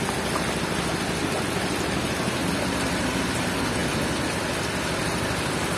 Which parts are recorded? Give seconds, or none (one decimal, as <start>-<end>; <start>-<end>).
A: 0.0-5.8